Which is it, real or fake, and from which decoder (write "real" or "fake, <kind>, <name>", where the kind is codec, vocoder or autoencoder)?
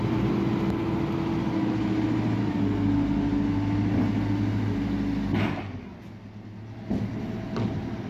real